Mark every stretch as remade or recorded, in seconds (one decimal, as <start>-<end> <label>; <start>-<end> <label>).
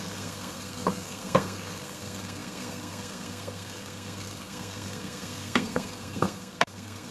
0.0-7.1 remade